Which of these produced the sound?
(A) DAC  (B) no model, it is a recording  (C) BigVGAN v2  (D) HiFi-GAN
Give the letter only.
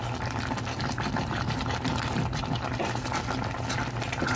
B